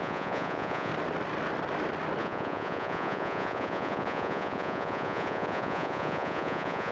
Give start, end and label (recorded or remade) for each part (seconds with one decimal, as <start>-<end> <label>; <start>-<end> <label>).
0.0-0.9 remade; 0.9-2.2 recorded; 2.2-6.9 remade